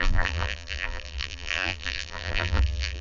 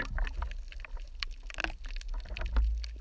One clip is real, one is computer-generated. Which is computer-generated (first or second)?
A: first